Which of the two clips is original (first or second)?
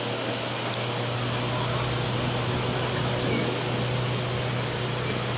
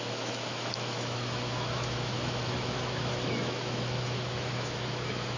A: first